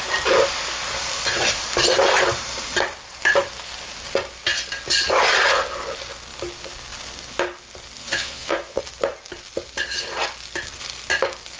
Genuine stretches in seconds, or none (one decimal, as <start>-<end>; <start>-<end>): 0.0-8.0; 8.8-11.6